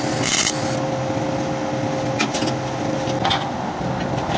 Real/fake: real